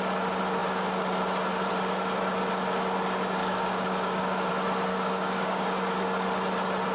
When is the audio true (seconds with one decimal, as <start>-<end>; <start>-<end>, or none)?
0.0-3.4; 4.5-4.9; 5.8-6.9